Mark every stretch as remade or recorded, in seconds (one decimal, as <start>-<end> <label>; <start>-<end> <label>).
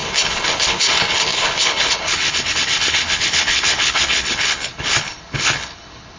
0.0-6.2 remade